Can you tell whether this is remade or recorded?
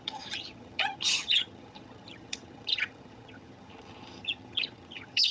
remade